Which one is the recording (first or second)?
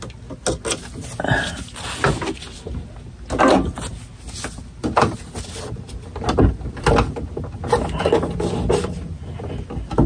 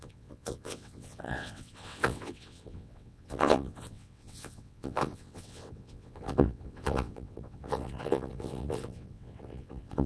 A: first